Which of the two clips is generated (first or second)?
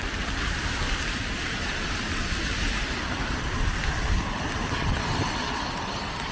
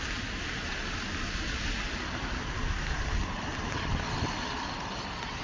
first